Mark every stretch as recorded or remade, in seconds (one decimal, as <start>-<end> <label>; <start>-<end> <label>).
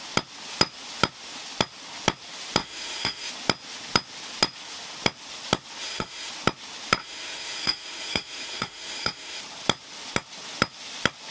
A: 0.0-2.6 recorded; 2.6-3.3 remade; 3.3-5.8 recorded; 5.8-6.3 remade; 6.3-7.0 recorded; 7.0-9.4 remade; 9.4-11.3 recorded